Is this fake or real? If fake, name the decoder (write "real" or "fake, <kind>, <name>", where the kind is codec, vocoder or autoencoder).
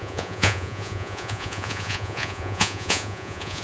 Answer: fake, vocoder, Vocos